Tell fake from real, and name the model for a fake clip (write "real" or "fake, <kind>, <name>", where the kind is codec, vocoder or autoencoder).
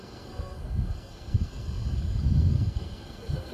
fake, codec, SNAC